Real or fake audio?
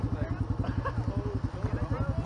real